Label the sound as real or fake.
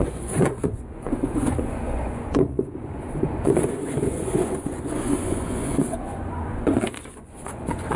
fake